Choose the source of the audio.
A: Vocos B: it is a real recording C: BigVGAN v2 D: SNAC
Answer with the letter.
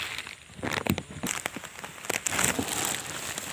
B